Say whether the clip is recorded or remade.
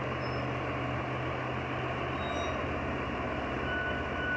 recorded